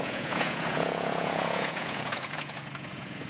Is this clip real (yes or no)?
no